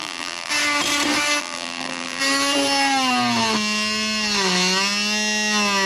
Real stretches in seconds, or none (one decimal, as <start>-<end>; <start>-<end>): 0.5-1.4; 2.2-5.9